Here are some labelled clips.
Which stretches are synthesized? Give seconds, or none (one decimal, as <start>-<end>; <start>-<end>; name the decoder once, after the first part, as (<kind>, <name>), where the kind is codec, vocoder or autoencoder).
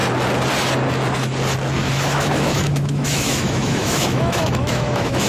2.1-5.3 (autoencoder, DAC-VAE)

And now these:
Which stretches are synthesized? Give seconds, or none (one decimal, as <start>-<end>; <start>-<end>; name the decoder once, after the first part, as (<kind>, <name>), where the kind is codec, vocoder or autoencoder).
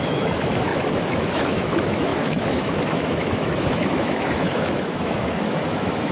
0.0-6.1 (autoencoder, DAC-VAE)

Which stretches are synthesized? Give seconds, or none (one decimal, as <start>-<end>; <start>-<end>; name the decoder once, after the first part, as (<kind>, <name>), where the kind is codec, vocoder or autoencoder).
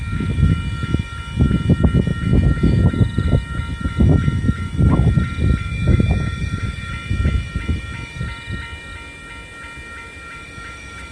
5.7-6.9 (autoencoder, DAC-VAE)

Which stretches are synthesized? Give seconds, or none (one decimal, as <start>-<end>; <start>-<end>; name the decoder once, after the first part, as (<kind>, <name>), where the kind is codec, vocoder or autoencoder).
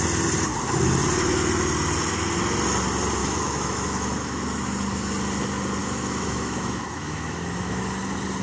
3.2-4.4 (autoencoder, DAC-VAE); 5.8-7.8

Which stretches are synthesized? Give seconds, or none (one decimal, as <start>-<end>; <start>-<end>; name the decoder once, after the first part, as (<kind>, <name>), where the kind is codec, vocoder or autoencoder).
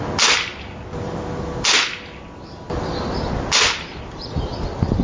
none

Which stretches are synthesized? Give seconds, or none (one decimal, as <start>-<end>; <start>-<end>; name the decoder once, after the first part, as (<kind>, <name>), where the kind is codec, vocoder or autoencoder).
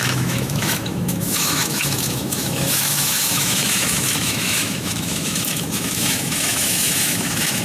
0.0-7.6 (autoencoder, DAC-VAE)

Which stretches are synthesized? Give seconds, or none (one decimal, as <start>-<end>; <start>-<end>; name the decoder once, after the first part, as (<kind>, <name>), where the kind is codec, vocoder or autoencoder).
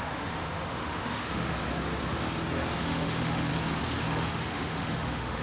0.0-1.6 (autoencoder, DAC-VAE); 2.8-3.5; 4.0-5.4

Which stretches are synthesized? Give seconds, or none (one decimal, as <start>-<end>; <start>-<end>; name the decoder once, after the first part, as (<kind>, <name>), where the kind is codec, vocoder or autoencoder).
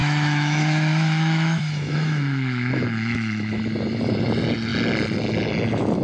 0.0-3.6 (autoencoder, DAC-VAE)